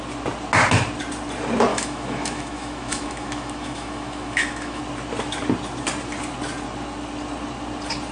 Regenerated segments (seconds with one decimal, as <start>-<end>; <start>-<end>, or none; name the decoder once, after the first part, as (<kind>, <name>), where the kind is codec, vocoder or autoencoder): 1.7-4.8 (autoencoder, DAC-VAE)